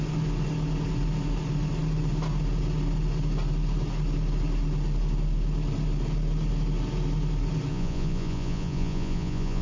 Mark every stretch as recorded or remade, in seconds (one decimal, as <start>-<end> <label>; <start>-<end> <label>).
0.0-7.7 recorded; 7.7-9.6 remade